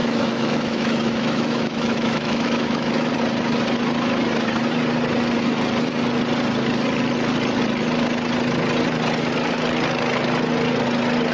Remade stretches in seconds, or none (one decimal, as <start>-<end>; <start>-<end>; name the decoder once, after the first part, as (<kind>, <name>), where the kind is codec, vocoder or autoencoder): 0.0-3.1 (autoencoder, DAC-VAE)